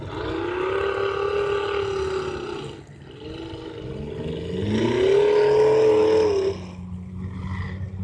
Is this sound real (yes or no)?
yes